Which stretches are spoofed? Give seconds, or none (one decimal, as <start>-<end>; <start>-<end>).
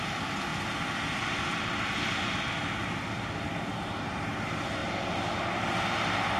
3.7-4.2; 4.8-5.7